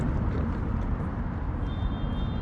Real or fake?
real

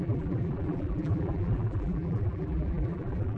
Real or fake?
fake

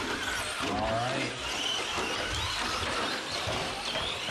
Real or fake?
real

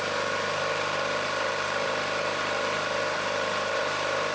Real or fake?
fake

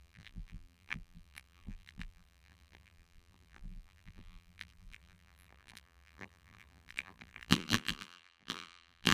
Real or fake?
fake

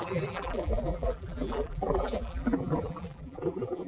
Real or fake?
fake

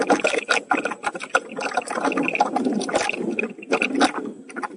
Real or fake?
real